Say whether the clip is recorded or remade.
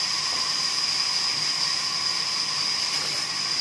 recorded